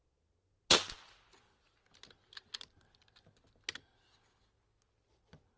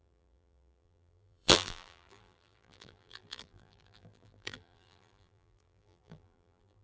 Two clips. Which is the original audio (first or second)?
first